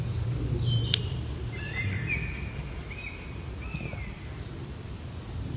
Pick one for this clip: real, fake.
real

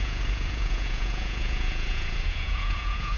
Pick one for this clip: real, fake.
fake